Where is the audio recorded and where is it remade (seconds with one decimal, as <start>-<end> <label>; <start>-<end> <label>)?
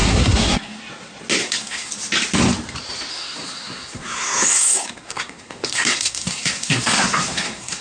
0.0-0.8 remade; 0.8-1.4 recorded; 1.4-1.9 remade; 1.9-3.1 recorded; 3.1-7.8 remade